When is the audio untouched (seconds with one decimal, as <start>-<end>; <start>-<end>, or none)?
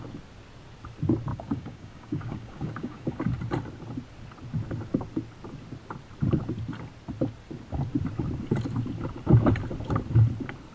0.0-1.3; 3.2-10.7